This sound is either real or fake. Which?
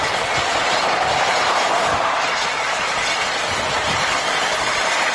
real